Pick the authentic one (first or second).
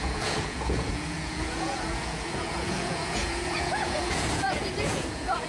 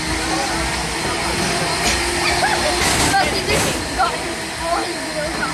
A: second